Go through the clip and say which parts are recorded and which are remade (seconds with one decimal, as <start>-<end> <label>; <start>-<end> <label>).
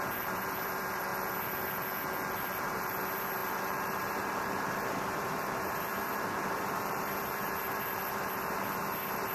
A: 0.0-1.1 remade; 1.1-2.3 recorded; 2.3-9.3 remade